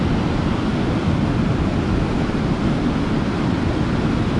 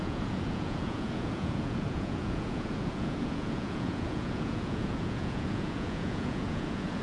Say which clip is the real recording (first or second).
first